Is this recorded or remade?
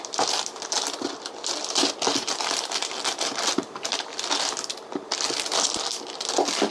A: recorded